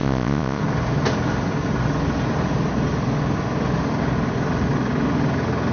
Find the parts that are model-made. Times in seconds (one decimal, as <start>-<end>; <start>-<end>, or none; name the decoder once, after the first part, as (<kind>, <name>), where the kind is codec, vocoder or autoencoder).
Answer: 0.0-0.6 (vocoder, Vocos)